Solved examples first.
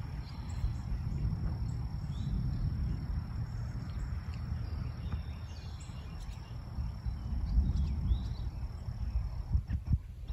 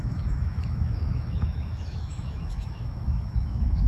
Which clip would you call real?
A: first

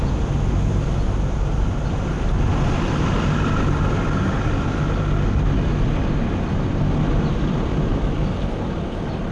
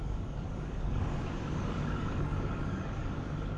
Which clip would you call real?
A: first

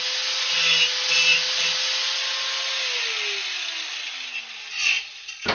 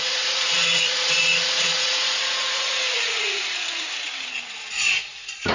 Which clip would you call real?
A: first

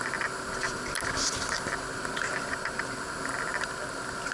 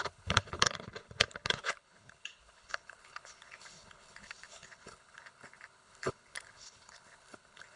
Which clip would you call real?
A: first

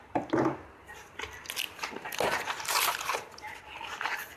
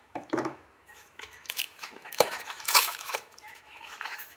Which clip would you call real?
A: first